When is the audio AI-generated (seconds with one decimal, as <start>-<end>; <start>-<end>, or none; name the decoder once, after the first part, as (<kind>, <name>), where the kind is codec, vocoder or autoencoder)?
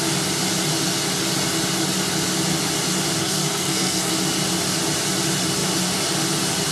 3.2-4.1 (codec, SNAC)